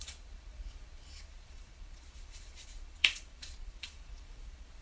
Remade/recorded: remade